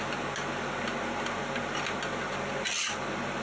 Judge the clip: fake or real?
real